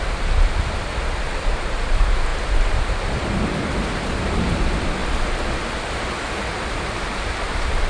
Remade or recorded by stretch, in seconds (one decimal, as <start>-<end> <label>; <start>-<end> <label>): 0.0-5.0 remade; 5.0-5.7 recorded; 5.7-7.9 remade